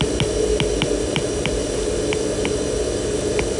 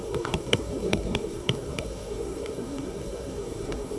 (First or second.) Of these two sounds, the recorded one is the first